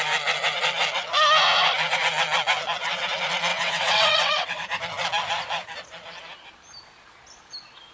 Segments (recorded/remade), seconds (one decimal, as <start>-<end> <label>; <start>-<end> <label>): 0.0-3.5 recorded; 3.5-4.6 remade; 4.6-7.9 recorded